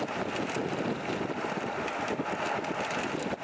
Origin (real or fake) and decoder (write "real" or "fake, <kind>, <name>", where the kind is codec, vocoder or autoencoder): real